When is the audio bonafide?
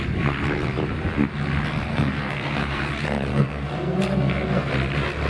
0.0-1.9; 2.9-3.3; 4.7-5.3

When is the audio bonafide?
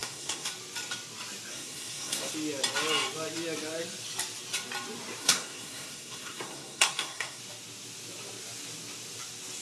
0.5-1.5; 2.3-5.2; 7.4-9.6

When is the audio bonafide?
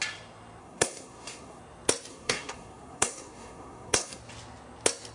0.0-0.6; 1.6-2.1; 4.2-5.1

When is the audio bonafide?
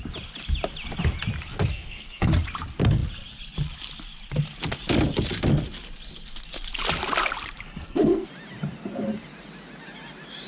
0.0-1.7; 2.3-7.7; 8.3-10.5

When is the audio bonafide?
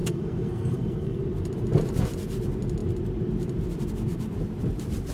1.2-5.1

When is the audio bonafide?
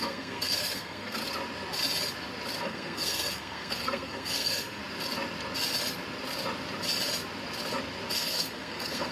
1.2-2.6; 4.8-8.1